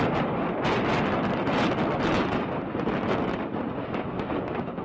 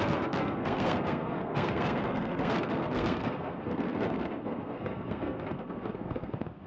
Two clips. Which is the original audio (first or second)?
first